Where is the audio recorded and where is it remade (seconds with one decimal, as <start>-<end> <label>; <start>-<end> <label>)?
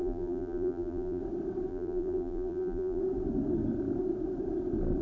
0.0-1.2 remade; 1.2-1.7 recorded; 1.7-3.0 remade; 3.0-5.0 recorded